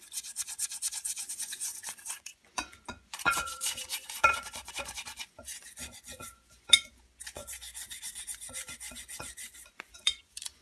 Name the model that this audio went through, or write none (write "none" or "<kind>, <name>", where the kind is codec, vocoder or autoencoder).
vocoder, Vocos